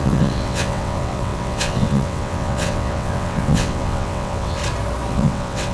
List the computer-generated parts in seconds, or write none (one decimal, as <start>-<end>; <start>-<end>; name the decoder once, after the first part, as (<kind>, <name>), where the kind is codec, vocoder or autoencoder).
0.0-4.6 (vocoder, WaveNeXt); 5.1-5.7